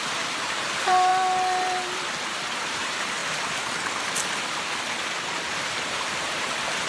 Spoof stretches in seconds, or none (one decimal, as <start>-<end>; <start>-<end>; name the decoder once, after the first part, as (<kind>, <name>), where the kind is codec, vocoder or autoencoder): 0.0-1.1 (vocoder, BigVGAN v2); 2.6-3.2; 5.5-6.9